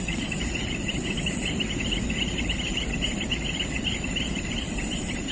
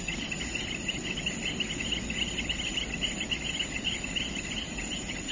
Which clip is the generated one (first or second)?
first